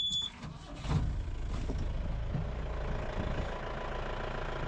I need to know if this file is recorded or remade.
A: recorded